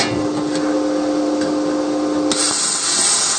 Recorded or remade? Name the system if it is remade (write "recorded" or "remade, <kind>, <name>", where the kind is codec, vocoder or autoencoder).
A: recorded